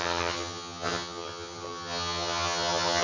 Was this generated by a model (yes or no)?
yes